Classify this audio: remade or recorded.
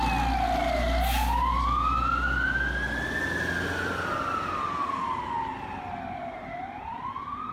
recorded